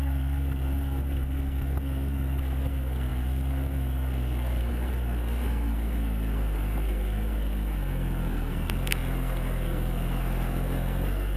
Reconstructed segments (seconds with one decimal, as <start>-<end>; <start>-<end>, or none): 0.0-11.4